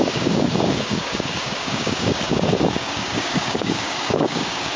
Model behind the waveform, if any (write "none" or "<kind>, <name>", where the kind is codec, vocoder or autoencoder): codec, DAC